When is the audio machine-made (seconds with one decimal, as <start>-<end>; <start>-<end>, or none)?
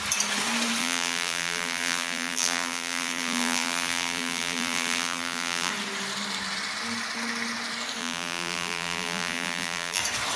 0.8-5.7; 8.0-10.0